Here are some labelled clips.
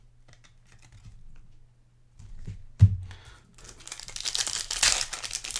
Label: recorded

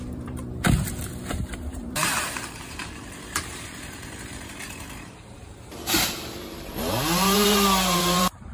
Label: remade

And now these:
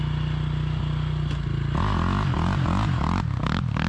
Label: recorded